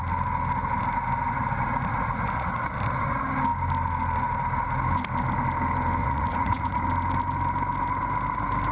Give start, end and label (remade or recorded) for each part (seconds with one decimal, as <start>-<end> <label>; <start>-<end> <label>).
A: 0.0-1.9 recorded; 1.9-2.7 remade; 2.7-6.0 recorded; 6.0-6.8 remade; 6.8-8.7 recorded